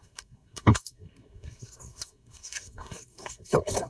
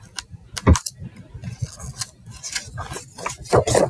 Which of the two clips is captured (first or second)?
second